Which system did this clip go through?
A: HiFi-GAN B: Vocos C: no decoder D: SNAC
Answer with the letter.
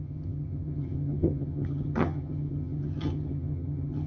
A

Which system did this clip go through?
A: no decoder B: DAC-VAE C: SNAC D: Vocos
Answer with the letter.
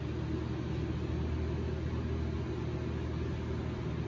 A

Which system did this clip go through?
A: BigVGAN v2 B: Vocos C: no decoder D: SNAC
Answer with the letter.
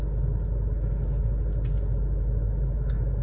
C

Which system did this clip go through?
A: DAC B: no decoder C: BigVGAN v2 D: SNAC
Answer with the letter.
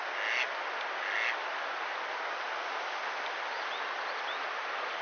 B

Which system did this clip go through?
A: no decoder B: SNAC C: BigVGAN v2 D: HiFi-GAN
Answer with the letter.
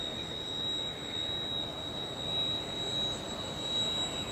A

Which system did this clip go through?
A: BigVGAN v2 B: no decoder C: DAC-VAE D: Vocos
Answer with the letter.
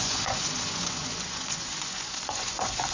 D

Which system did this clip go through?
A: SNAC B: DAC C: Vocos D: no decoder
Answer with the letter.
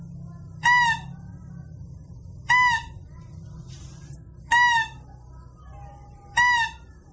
D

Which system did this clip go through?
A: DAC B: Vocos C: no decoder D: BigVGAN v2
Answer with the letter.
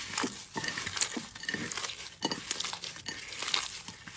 C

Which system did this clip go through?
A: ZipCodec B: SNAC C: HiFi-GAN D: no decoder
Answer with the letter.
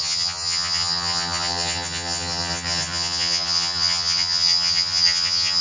C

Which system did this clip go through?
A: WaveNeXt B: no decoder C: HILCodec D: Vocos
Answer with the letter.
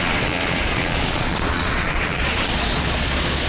D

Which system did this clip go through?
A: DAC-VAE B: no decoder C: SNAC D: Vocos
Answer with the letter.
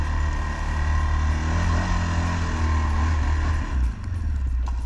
B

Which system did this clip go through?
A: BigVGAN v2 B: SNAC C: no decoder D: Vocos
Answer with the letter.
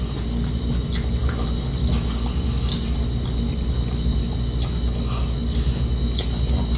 C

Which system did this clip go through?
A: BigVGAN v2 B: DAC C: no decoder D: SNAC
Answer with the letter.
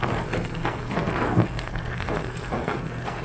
D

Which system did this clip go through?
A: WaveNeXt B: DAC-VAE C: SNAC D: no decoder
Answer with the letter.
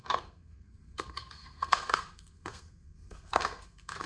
C